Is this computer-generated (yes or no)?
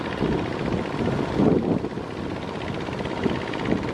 no